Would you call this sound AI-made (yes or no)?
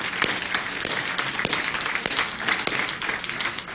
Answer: no